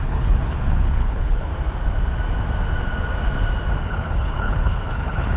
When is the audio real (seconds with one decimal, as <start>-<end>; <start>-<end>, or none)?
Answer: 1.5-3.8